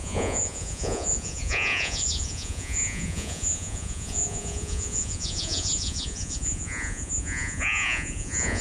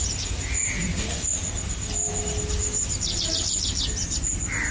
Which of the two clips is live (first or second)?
second